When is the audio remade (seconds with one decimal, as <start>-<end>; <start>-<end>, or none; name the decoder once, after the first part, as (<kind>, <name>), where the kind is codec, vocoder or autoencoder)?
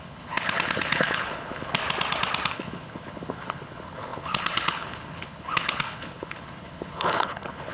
0.0-1.8 (codec, HILCodec); 2.5-7.7